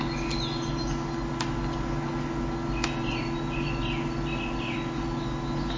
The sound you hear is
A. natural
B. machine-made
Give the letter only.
A